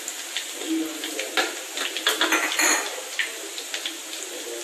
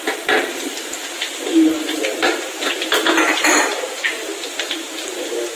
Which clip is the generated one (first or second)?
second